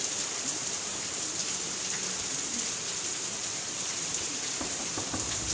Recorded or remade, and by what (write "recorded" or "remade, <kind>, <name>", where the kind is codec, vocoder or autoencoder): remade, vocoder, BigVGAN v2